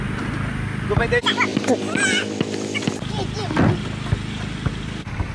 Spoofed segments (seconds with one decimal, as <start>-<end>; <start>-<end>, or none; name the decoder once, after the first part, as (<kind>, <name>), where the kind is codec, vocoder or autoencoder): none

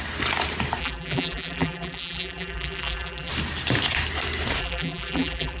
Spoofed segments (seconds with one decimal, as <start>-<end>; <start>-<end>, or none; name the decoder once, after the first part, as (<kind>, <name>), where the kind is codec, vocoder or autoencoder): 0.8-3.3 (vocoder, BigVGAN v2); 4.6-5.6

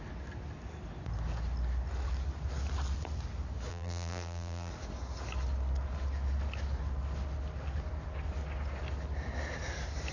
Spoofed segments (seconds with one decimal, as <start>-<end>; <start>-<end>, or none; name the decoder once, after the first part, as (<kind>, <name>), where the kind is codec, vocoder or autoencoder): 3.7-4.7 (vocoder, BigVGAN v2)

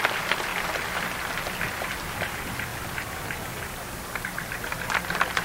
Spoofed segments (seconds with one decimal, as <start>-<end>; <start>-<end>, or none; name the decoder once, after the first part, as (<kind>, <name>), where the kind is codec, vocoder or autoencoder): 0.0-0.5 (vocoder, BigVGAN v2); 1.7-2.7; 3.2-5.4

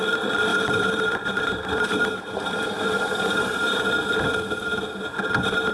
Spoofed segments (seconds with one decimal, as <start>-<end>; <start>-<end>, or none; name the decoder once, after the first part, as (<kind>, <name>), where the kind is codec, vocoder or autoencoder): 0.5-3.8 (vocoder, BigVGAN v2)